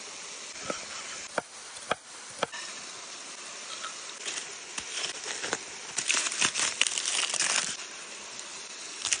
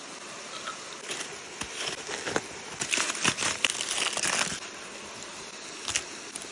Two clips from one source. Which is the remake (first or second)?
first